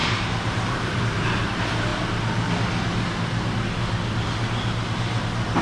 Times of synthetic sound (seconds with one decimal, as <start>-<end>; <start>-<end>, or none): 0.0-1.0